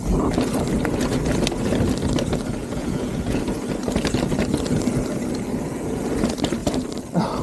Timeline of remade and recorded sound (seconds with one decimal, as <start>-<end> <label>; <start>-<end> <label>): 0.0-2.6 recorded; 2.6-3.4 remade; 3.4-7.4 recorded

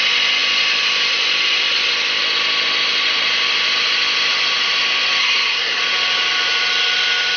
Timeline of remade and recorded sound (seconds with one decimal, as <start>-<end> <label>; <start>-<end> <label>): 0.0-5.2 recorded; 5.2-5.8 remade; 5.8-7.4 recorded